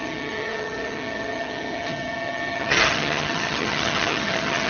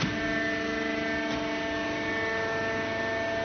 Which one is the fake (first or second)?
first